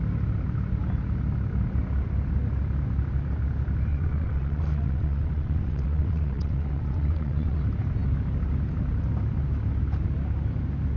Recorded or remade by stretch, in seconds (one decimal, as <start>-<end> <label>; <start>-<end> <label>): 0.0-3.9 recorded; 3.9-7.6 remade; 7.6-11.0 recorded